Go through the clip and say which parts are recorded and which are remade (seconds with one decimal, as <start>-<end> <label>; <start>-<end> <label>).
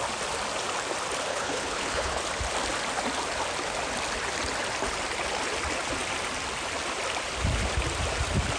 0.0-1.3 recorded; 1.3-2.2 remade; 2.2-8.6 recorded